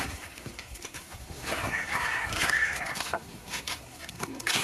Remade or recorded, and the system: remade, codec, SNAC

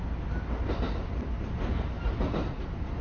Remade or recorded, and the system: recorded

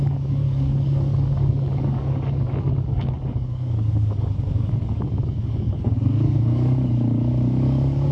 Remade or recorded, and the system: remade, codec, DAC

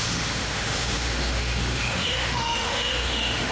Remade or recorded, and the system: remade, autoencoder, DAC-VAE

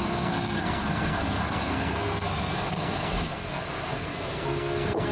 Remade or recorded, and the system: remade, codec, SNAC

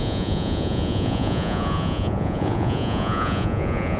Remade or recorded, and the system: remade, vocoder, Vocos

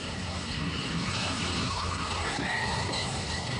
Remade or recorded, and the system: remade, codec, SNAC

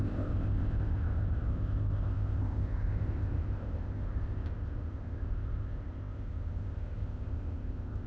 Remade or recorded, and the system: remade, codec, ZipCodec